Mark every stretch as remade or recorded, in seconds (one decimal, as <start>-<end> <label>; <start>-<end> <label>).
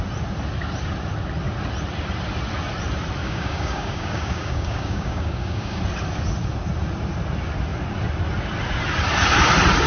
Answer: 0.0-3.2 recorded; 3.2-5.8 remade; 5.8-9.9 recorded